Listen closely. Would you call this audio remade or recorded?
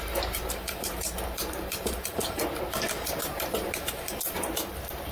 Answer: remade